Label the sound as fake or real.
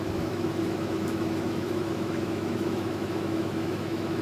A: fake